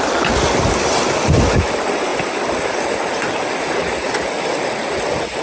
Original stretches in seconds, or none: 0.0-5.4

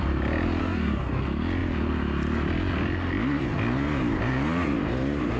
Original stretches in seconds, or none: 0.0-0.6; 1.2-5.4

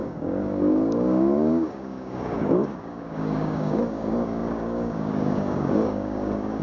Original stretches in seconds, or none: none

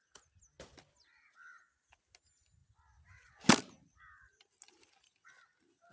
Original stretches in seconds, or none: 0.0-5.9

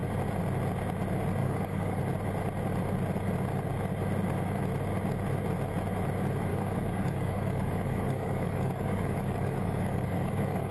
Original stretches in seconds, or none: 0.0-1.4; 2.0-6.5

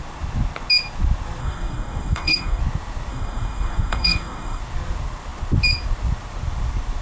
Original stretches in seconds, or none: 0.0-1.4; 2.6-3.1; 4.6-7.0